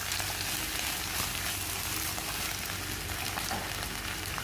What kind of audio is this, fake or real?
real